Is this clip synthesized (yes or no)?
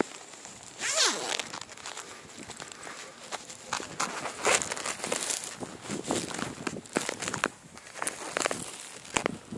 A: no